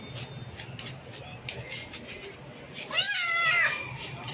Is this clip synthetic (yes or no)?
no